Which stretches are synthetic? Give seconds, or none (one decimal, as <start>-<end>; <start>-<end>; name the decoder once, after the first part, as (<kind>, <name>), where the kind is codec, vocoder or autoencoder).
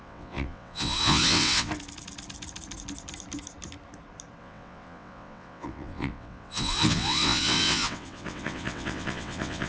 0.0-1.7 (vocoder, WaveNeXt); 4.4-9.7